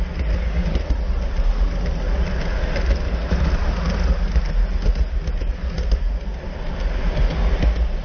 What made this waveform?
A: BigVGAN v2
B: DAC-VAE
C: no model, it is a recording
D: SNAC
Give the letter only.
C